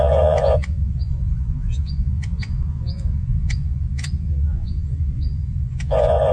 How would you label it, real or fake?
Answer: fake